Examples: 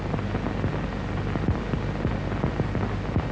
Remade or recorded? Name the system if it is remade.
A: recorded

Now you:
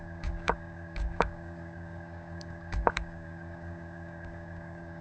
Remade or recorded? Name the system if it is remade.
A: remade, codec, DAC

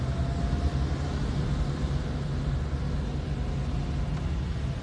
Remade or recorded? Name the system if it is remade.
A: recorded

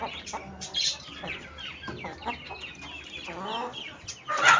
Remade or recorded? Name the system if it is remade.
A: recorded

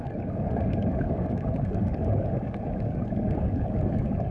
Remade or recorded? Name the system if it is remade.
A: remade, codec, DAC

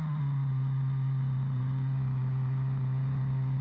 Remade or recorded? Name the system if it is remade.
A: recorded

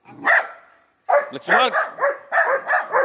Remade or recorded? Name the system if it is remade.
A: recorded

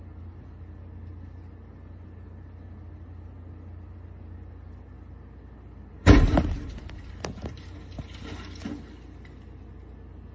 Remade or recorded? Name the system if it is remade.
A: recorded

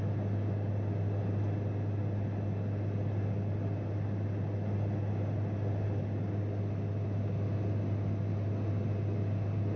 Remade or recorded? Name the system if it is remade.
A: recorded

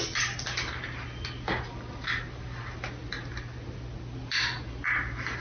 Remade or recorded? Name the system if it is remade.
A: recorded